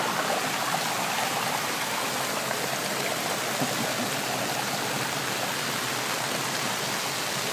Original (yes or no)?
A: yes